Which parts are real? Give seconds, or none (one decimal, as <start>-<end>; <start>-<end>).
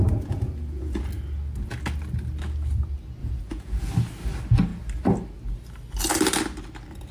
1.0-3.2; 3.9-7.1